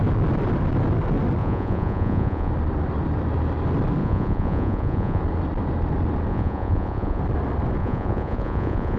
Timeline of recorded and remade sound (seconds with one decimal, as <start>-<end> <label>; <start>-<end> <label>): 0.0-1.4 recorded; 1.4-2.5 remade; 2.5-4.0 recorded; 4.0-5.2 remade; 5.2-6.3 recorded; 6.3-7.2 remade; 7.2-7.8 recorded; 7.8-9.0 remade